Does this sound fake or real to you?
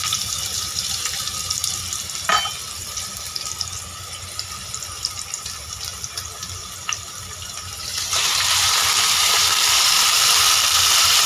fake